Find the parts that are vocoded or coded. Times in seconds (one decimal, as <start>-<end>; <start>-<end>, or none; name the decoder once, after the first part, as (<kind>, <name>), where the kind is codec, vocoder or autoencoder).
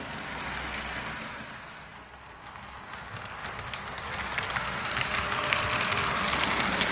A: none